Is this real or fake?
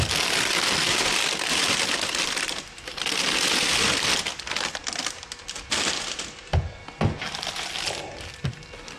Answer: real